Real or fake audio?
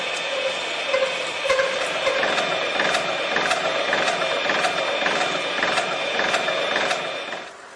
real